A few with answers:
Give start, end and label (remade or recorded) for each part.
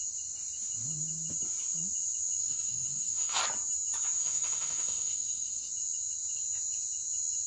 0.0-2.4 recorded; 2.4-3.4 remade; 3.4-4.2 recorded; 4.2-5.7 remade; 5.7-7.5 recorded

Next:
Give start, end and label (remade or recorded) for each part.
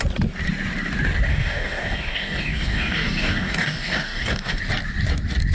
0.0-1.3 recorded; 1.3-4.6 remade; 4.6-5.5 recorded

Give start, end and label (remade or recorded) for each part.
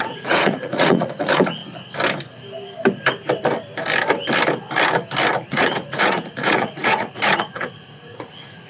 0.0-1.6 remade; 1.6-5.5 recorded; 5.5-8.7 remade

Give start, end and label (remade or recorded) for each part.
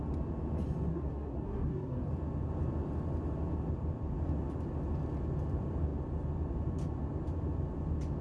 0.0-0.9 recorded; 0.9-2.1 remade; 2.1-8.2 recorded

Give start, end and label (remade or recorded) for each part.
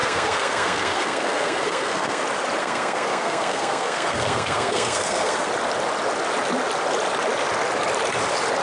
0.0-2.2 remade; 2.2-2.6 recorded; 2.6-5.5 remade; 5.5-8.6 recorded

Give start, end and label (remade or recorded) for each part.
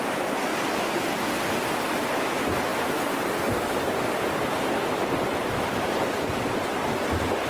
0.0-7.5 recorded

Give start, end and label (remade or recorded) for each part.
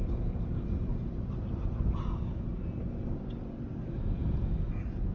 0.0-0.9 remade; 0.9-4.0 recorded; 4.0-5.1 remade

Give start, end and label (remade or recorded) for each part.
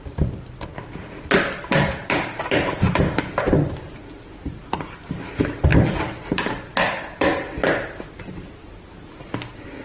0.0-9.8 recorded